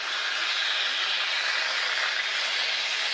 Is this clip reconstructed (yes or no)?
no